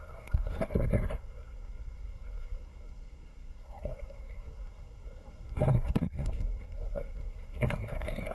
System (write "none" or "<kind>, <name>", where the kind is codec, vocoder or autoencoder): codec, SNAC